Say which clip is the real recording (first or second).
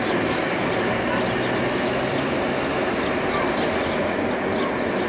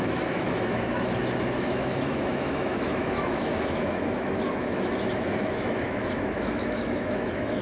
first